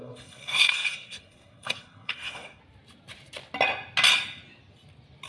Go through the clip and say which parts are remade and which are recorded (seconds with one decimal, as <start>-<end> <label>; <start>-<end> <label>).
0.0-2.6 remade; 2.6-5.3 recorded